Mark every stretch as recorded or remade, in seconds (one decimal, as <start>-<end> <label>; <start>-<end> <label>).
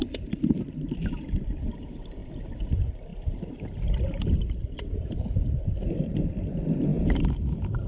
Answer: 0.0-7.9 recorded